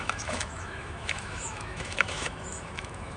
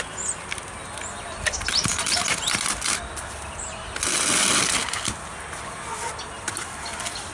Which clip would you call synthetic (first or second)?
first